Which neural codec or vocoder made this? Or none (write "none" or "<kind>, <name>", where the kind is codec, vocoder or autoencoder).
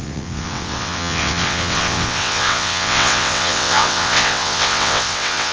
vocoder, WaveNeXt